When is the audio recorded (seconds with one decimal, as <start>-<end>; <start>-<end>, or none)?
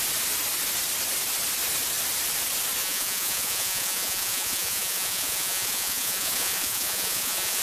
0.0-2.8